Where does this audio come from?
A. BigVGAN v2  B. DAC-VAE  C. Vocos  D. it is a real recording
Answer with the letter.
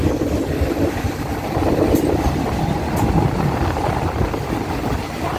D